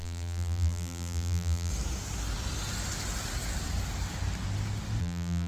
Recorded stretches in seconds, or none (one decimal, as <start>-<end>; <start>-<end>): 1.7-5.0